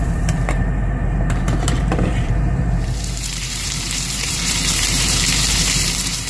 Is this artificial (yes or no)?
yes